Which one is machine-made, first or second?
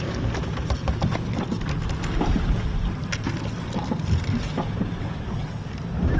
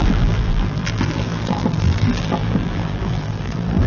second